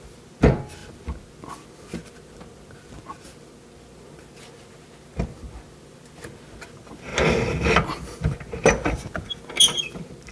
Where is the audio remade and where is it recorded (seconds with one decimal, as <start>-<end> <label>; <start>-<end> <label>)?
0.0-10.3 recorded